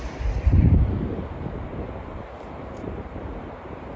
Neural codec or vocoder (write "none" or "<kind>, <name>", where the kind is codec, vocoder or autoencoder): vocoder, BigVGAN v2